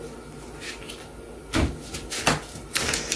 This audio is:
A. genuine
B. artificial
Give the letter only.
A